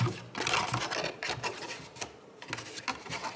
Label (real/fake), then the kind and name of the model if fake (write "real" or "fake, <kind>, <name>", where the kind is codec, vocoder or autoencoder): real